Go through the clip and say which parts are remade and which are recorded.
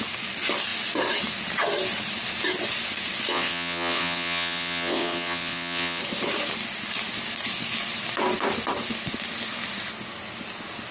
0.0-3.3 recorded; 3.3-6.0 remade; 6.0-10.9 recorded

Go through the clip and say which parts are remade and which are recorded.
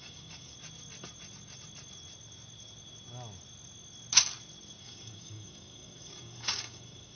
0.0-0.5 remade; 0.5-4.8 recorded; 4.8-7.2 remade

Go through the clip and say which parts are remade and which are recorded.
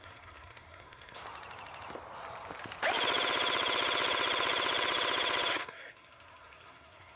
0.0-1.2 remade; 1.2-5.5 recorded; 5.5-7.2 remade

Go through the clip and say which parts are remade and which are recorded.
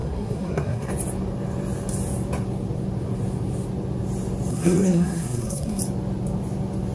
0.0-0.9 remade; 0.9-4.5 recorded; 4.5-5.8 remade; 5.8-6.9 recorded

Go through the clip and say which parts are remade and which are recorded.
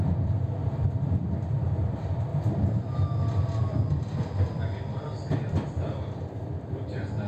0.0-2.3 remade; 2.3-3.6 recorded; 3.6-7.3 remade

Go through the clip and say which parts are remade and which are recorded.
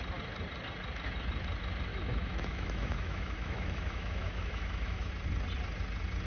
0.0-1.9 recorded; 1.9-5.1 remade; 5.1-6.3 recorded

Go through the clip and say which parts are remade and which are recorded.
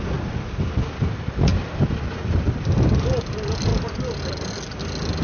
0.0-5.2 recorded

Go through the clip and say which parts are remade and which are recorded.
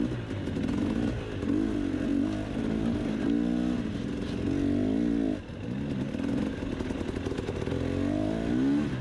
0.0-9.0 recorded